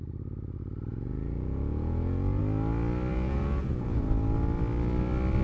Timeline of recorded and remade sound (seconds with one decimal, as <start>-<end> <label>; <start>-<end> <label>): 0.0-0.9 recorded; 0.9-2.4 remade; 2.4-3.1 recorded; 3.1-4.0 remade; 4.0-5.4 recorded